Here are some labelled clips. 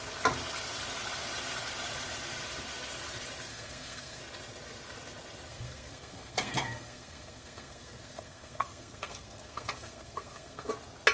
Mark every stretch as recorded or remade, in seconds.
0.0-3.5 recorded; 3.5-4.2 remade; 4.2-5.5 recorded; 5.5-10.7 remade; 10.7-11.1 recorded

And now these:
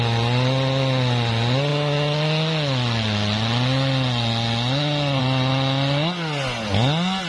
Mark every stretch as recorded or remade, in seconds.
0.0-7.3 recorded